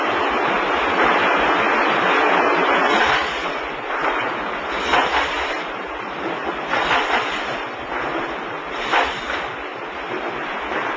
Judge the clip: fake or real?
real